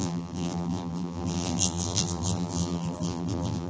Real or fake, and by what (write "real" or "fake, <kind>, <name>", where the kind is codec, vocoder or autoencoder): fake, vocoder, BigVGAN v2